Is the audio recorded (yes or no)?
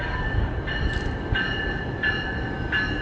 yes